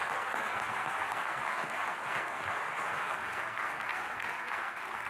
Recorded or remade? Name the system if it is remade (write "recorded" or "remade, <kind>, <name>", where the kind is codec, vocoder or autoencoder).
remade, codec, SNAC